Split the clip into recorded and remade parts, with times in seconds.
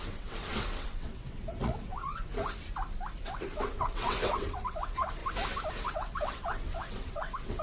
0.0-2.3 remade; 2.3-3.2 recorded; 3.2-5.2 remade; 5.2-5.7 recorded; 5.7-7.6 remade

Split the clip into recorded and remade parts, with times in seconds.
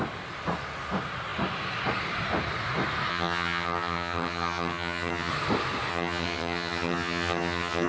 0.0-3.1 recorded; 3.1-5.3 remade; 5.3-5.9 recorded; 5.9-7.9 remade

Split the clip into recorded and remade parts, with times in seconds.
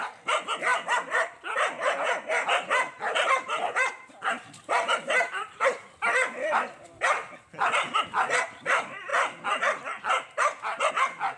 0.0-11.4 remade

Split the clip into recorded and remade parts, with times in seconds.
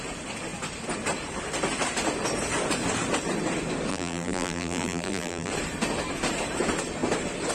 0.0-3.9 recorded; 3.9-5.5 remade; 5.5-7.5 recorded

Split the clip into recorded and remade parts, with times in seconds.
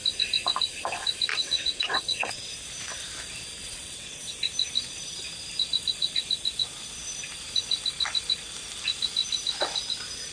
0.0-1.3 recorded; 1.3-2.5 remade; 2.5-3.6 recorded; 3.6-4.3 remade; 4.3-10.3 recorded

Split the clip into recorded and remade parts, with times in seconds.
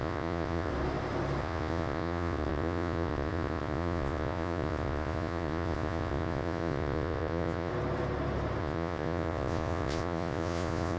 0.0-0.7 remade; 0.7-1.4 recorded; 1.4-7.7 remade; 7.7-8.6 recorded; 8.6-11.0 remade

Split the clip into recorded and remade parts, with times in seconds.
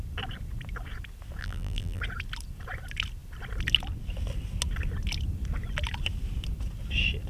0.0-1.4 recorded; 1.4-2.0 remade; 2.0-7.3 recorded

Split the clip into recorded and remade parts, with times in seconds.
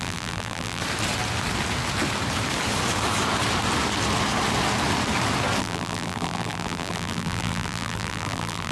0.0-0.8 remade; 0.8-5.6 recorded; 5.6-8.7 remade